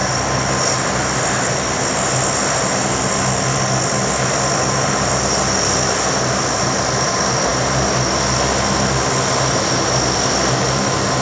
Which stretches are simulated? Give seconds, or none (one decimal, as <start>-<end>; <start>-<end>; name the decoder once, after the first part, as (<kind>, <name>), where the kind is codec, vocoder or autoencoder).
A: none